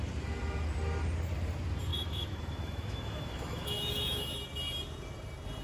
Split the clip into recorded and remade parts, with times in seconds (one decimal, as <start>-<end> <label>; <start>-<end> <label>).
0.0-1.9 recorded; 1.9-4.4 remade; 4.4-5.6 recorded

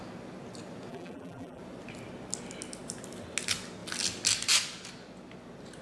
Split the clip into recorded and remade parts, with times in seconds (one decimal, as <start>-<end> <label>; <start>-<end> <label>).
0.0-0.9 recorded; 0.9-1.6 remade; 1.6-5.8 recorded

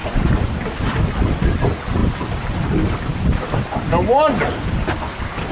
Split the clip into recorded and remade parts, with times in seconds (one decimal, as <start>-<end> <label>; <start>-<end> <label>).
0.0-5.5 recorded